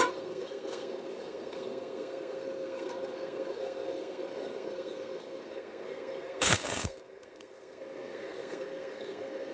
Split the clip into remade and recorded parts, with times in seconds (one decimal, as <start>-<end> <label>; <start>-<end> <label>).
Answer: 0.0-9.5 remade